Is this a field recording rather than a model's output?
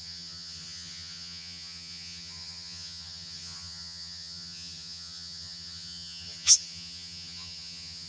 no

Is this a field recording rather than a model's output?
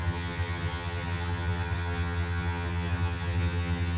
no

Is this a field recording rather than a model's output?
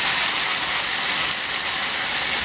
yes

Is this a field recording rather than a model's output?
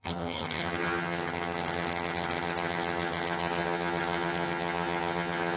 no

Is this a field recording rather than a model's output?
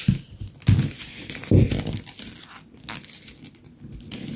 yes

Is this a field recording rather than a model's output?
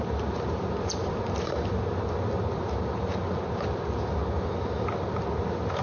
yes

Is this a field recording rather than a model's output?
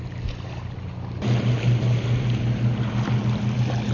yes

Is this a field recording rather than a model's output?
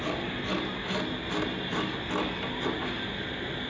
yes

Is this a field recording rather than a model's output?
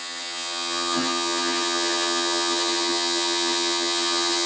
no